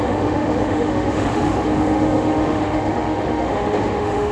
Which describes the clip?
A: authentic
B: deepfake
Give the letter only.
B